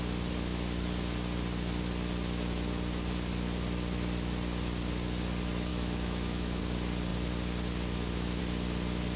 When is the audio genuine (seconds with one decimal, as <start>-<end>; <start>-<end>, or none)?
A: 0.0-5.7; 6.6-9.2